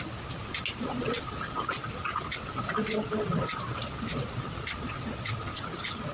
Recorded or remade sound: recorded